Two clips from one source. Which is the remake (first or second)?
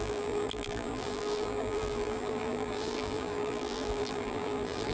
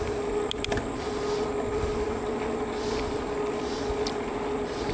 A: first